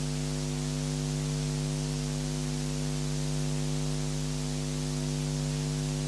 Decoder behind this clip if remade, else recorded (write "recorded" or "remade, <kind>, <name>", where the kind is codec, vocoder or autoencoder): recorded